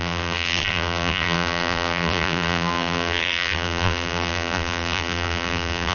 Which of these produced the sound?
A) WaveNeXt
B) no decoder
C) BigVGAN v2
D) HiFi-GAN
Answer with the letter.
C